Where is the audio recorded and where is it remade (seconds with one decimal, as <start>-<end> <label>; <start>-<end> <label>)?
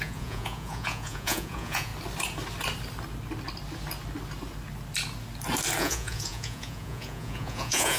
0.0-1.9 remade; 1.9-5.8 recorded; 5.8-8.0 remade